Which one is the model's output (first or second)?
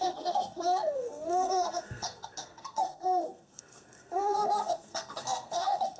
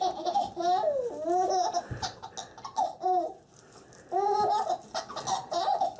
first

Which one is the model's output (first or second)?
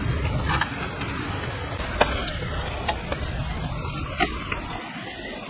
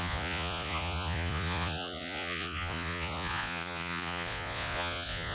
second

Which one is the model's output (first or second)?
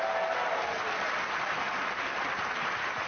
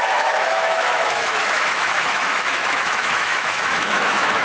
second